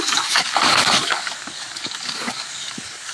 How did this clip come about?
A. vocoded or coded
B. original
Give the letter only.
A